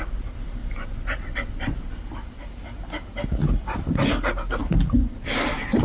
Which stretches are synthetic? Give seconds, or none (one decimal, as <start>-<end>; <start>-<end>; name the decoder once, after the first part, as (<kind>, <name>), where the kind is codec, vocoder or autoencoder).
none